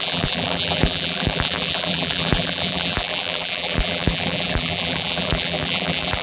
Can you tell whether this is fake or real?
fake